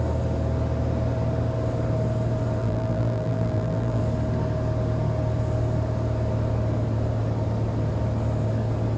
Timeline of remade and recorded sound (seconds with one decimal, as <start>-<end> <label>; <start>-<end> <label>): 0.0-2.6 recorded; 2.6-4.0 remade; 4.0-9.0 recorded